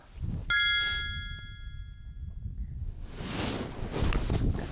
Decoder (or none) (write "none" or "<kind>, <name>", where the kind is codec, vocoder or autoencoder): none